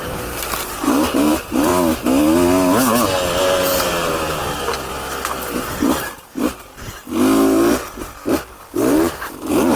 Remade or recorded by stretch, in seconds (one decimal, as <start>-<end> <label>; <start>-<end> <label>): 0.0-1.7 remade; 1.7-3.4 recorded; 3.4-4.7 remade; 4.7-8.5 recorded; 8.5-9.8 remade